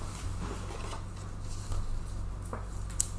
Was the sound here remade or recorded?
recorded